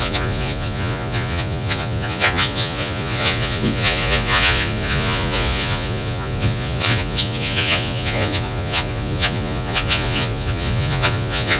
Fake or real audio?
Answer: fake